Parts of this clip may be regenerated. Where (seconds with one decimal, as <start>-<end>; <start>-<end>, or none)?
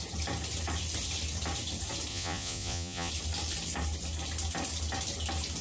2.1-3.1